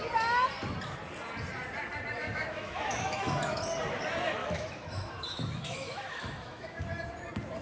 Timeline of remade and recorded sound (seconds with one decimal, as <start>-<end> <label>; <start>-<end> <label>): 0.0-2.2 recorded; 2.2-3.6 remade; 3.6-4.4 recorded; 4.4-6.8 remade; 6.8-7.6 recorded